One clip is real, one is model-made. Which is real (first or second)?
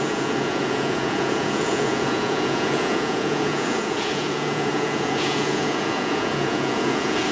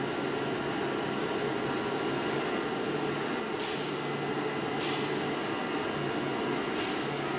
second